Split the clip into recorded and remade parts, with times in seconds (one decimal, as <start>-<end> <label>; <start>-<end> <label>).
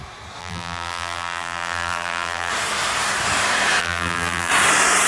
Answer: 0.0-0.4 recorded; 0.4-2.5 remade; 2.5-3.8 recorded; 3.8-4.5 remade; 4.5-5.1 recorded